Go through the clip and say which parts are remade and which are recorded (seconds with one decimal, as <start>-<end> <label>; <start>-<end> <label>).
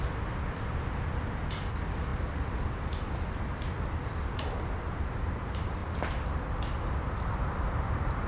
0.0-2.1 recorded; 2.1-4.4 remade; 4.4-8.3 recorded